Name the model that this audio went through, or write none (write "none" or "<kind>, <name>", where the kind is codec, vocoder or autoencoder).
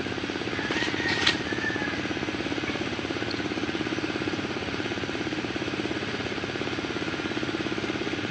vocoder, Vocos